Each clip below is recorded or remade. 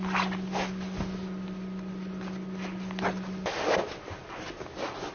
recorded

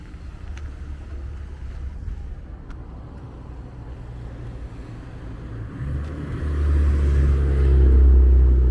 recorded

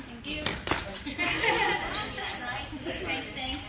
recorded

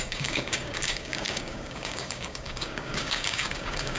remade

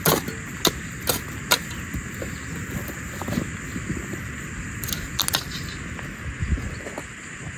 recorded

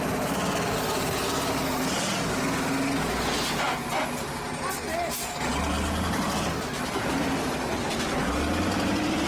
recorded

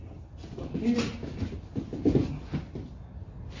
recorded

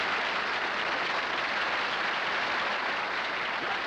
recorded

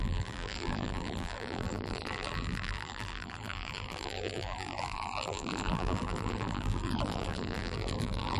remade